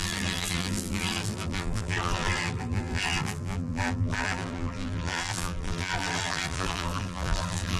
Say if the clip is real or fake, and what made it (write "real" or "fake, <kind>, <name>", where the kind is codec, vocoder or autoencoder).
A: fake, vocoder, BigVGAN v2